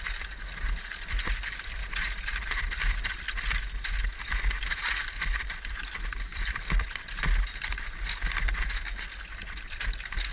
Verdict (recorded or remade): recorded